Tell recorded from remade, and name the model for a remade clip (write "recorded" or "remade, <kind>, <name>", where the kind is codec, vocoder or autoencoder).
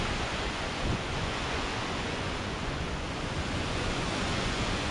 remade, vocoder, Vocos